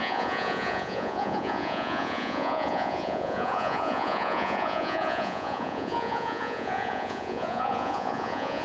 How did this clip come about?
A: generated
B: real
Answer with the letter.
A